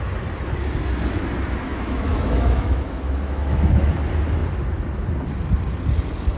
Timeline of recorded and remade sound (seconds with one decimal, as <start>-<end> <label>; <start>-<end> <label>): 0.0-1.7 recorded; 1.7-3.9 remade; 3.9-6.4 recorded